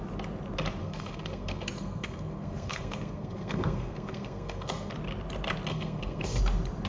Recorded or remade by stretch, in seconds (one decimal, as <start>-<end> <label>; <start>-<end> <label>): 0.0-0.8 recorded; 0.8-4.9 remade; 4.9-5.7 recorded; 5.7-6.4 remade; 6.4-6.9 recorded